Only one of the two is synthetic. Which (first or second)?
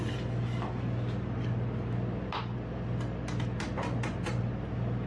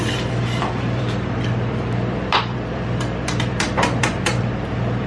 second